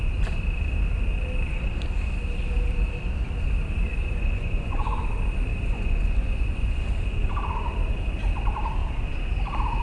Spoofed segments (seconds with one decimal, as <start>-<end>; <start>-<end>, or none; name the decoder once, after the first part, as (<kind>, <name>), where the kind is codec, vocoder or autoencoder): 3.9-5.0 (vocoder, Vocos); 5.5-6.8